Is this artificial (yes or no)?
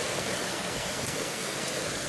yes